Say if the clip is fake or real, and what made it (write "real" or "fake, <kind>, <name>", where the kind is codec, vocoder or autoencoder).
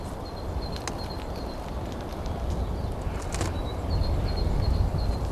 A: real